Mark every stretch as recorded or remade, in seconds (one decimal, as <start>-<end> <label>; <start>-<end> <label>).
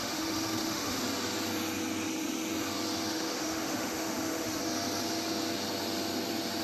0.0-1.0 remade; 1.0-3.1 recorded; 3.1-4.6 remade; 4.6-6.6 recorded